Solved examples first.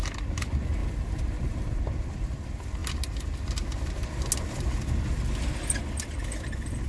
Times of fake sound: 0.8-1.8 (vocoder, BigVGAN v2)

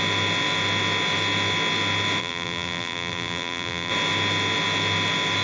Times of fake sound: 2.2-3.9 (vocoder, BigVGAN v2)

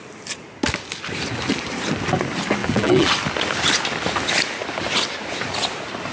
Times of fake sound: 2.6-3.1 (vocoder, BigVGAN v2)